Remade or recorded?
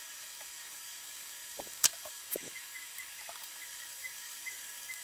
remade